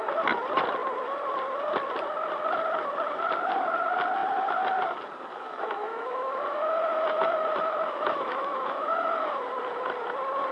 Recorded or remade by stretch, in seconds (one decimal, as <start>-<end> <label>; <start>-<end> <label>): 0.0-5.3 recorded; 5.3-9.4 remade; 9.4-10.5 recorded